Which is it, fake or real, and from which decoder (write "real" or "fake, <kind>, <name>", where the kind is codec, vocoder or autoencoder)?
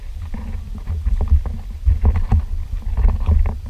real